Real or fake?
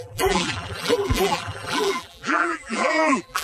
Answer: fake